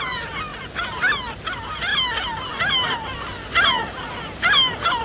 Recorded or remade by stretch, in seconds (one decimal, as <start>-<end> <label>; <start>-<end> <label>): 0.0-5.0 recorded